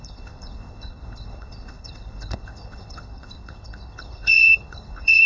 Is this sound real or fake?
fake